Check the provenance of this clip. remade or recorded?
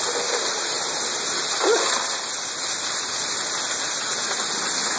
recorded